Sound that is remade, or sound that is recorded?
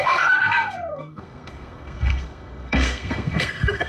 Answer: remade